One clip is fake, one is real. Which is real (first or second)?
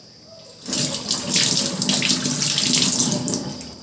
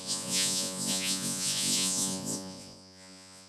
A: first